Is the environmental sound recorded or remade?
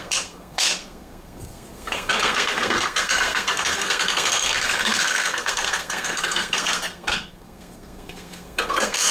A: remade